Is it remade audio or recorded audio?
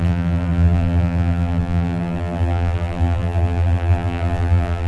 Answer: remade